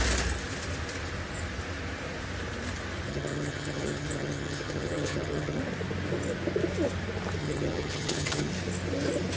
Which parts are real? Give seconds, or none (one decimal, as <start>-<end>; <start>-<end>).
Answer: 0.0-3.1; 5.6-7.4; 8.5-9.4